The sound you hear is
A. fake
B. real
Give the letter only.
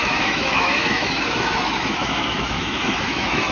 A